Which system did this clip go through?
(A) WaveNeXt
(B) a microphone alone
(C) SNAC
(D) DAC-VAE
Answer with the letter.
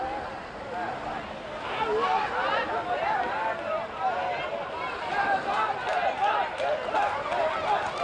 B